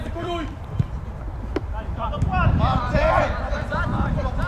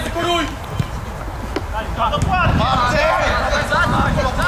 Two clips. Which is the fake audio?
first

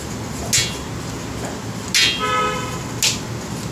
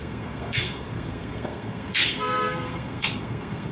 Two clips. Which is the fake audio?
second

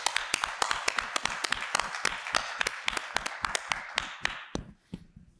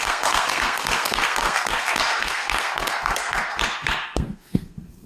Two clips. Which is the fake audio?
second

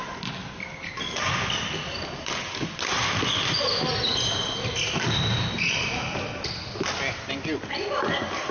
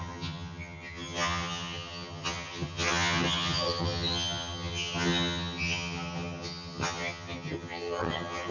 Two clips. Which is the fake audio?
second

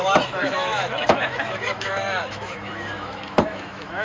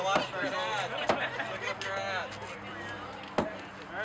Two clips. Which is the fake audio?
first